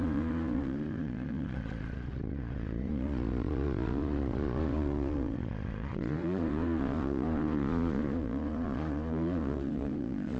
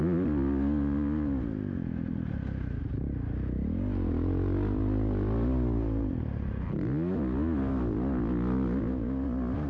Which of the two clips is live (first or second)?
second